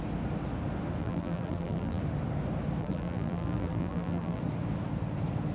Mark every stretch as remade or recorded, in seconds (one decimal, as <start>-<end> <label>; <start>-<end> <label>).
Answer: 0.0-1.0 recorded; 1.0-2.0 remade; 2.0-2.8 recorded; 2.8-4.4 remade; 4.4-5.5 recorded